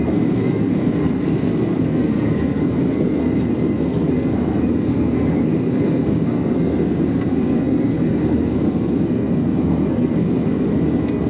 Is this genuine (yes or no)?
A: no